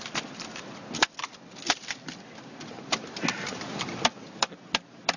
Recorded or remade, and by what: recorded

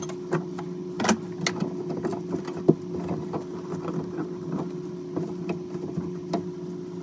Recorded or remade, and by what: recorded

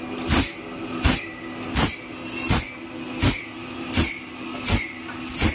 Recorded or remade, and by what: recorded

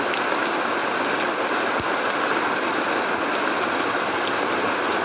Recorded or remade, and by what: recorded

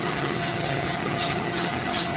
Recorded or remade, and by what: remade, vocoder, HiFi-GAN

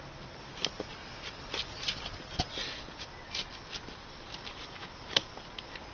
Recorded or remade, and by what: recorded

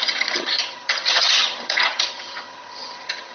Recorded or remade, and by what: remade, vocoder, HiFi-GAN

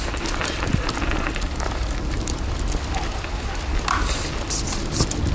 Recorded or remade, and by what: recorded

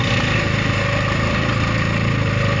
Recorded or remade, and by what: recorded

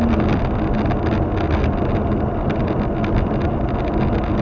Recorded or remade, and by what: recorded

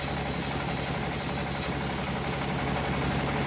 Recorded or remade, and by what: recorded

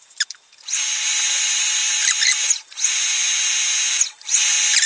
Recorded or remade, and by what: recorded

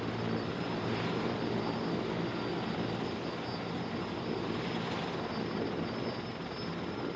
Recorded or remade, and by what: recorded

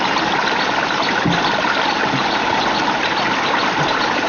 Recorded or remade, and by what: recorded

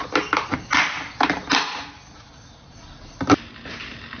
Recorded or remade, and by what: recorded